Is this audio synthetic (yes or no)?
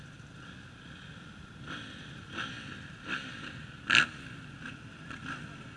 no